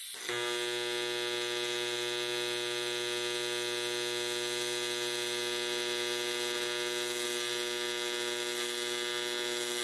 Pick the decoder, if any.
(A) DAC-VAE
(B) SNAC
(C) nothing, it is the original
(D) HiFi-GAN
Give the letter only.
C